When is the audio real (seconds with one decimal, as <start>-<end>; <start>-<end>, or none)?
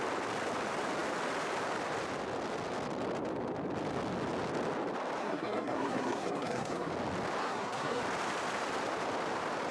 0.0-5.2; 6.9-7.4; 8.0-9.7